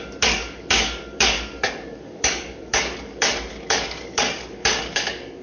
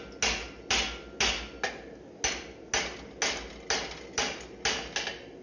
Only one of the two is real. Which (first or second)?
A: second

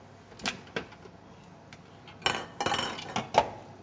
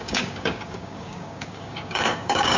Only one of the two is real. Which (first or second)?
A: first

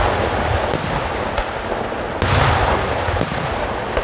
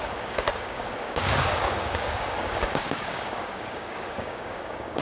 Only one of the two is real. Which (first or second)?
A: first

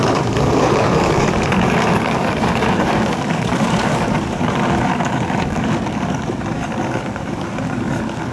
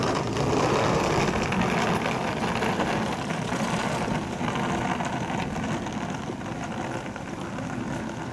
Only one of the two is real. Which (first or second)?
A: second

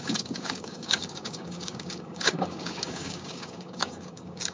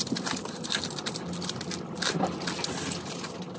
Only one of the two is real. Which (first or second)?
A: second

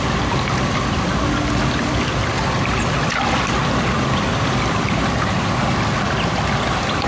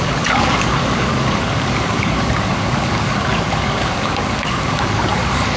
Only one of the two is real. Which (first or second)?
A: first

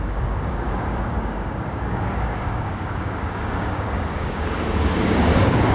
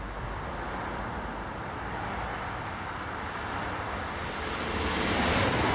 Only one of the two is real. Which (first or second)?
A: second